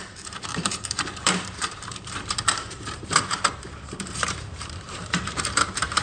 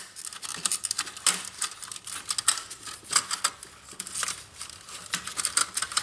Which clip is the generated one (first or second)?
first